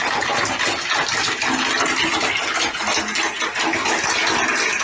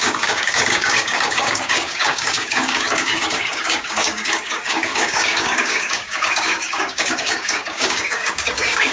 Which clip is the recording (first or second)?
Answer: first